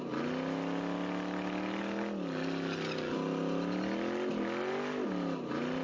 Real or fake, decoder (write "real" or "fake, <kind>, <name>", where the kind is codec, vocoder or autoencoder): real